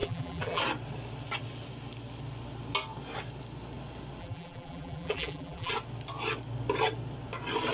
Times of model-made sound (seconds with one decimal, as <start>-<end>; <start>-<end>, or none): 0.0-0.6; 4.2-5.7